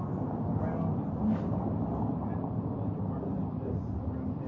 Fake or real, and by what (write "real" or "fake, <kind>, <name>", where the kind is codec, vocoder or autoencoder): real